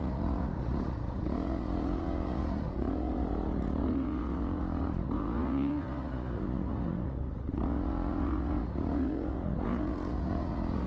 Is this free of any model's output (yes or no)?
no